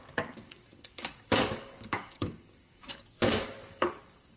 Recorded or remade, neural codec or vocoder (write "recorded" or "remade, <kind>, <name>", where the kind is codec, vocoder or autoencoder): remade, codec, DAC